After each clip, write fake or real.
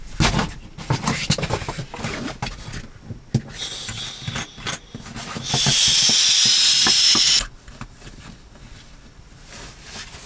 real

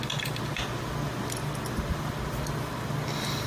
real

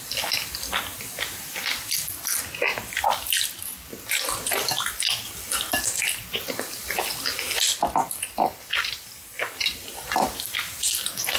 real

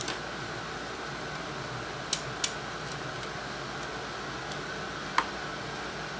real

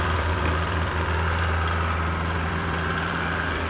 fake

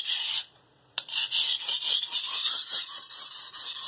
real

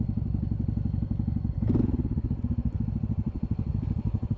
fake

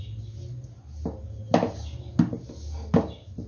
real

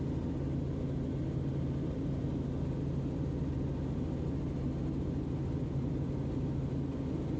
real